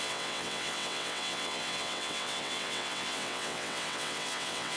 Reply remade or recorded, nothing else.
remade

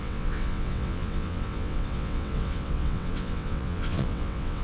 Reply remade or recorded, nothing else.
remade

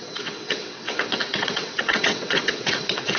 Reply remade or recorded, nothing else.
remade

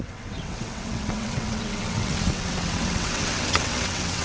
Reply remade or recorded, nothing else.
remade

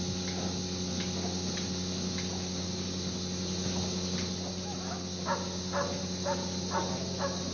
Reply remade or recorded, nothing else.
recorded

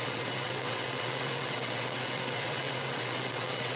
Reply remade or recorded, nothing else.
remade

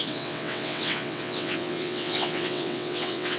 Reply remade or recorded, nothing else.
remade